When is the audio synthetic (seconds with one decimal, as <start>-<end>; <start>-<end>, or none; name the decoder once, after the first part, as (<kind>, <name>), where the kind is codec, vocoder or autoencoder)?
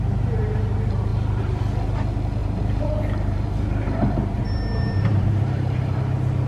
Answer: 1.1-1.6 (vocoder, BigVGAN v2); 2.4-6.0